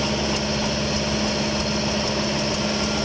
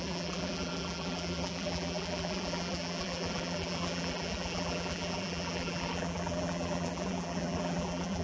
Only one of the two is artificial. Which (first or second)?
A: second